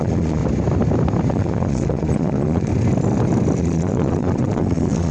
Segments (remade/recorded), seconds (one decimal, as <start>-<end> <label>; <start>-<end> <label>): 0.0-0.4 remade; 0.4-1.3 recorded; 1.3-2.7 remade; 2.7-3.6 recorded; 3.6-5.1 remade